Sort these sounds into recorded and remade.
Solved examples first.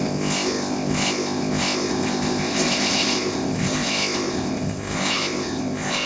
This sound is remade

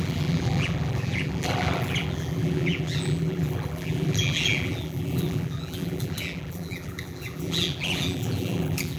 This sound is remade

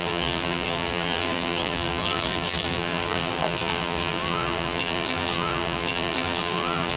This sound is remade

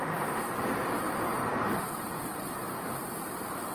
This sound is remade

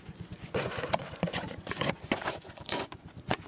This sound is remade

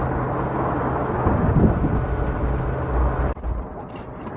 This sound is recorded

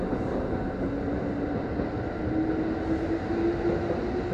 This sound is recorded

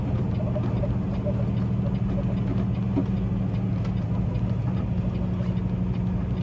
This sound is recorded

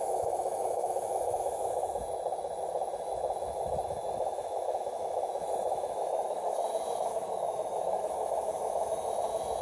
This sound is remade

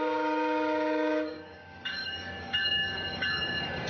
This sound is remade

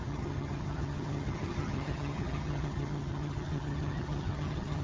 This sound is remade